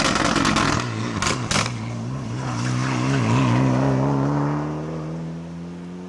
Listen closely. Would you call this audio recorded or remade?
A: recorded